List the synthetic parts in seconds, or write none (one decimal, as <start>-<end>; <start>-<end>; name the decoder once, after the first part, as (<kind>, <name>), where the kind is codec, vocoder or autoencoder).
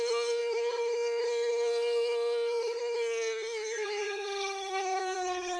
0.0-5.6 (codec, SNAC)